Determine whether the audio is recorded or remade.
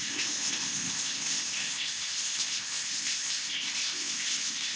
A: remade